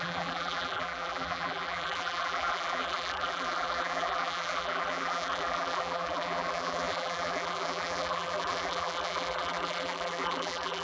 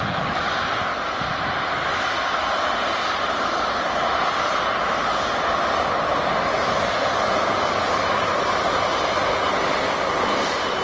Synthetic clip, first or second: first